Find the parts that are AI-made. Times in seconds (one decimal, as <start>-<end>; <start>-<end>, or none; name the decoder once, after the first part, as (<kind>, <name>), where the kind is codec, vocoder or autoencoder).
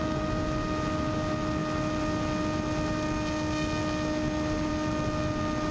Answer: none